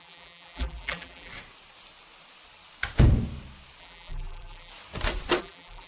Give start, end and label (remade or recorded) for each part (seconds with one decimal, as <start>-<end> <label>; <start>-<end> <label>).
0.0-1.3 remade; 1.3-3.8 recorded; 3.8-4.7 remade; 4.7-5.4 recorded; 5.4-5.9 remade